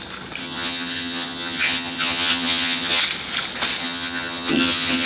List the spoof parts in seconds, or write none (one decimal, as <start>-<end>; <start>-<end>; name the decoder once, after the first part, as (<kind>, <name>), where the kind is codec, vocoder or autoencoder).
0.4-3.0 (vocoder, HiFi-GAN); 3.8-5.1